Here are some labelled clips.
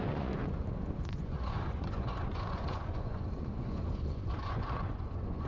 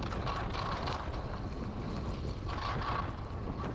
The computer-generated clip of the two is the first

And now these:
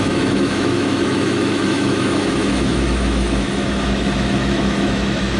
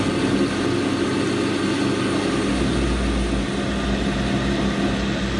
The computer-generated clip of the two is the first